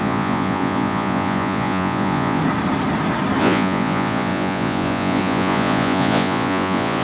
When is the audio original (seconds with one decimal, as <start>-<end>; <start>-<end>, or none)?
2.4-3.4